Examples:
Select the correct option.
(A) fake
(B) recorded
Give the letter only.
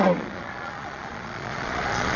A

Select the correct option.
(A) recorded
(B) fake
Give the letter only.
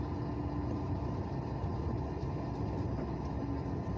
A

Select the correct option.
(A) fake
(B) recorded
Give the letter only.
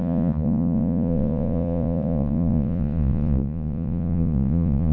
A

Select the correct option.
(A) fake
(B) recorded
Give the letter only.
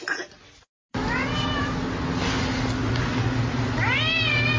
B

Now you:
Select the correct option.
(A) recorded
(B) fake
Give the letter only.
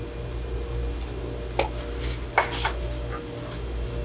A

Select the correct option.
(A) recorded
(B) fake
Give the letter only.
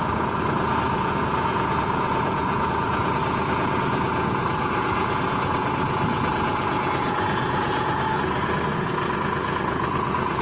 B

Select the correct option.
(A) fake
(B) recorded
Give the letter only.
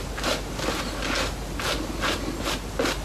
B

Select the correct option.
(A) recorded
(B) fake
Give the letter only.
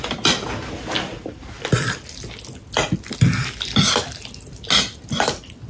A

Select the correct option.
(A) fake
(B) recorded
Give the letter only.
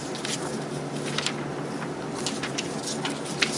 B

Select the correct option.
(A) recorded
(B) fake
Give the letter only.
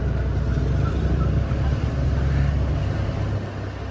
A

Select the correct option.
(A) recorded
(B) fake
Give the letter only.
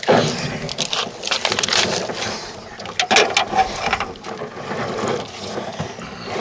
A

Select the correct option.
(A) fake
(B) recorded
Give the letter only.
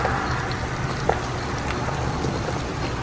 B